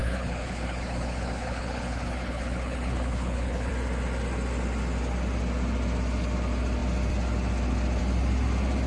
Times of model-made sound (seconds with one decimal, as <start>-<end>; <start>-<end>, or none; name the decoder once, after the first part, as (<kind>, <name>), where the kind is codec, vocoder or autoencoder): 0.0-3.7 (codec, HILCodec)